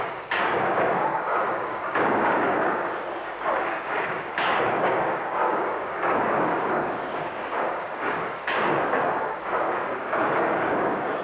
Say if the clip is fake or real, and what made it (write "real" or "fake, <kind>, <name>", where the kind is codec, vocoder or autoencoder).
fake, codec, DAC